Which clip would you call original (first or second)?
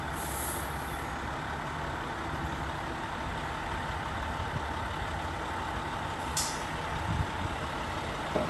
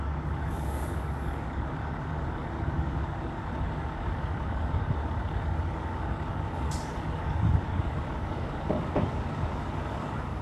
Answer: first